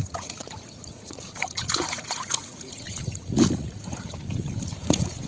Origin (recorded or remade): remade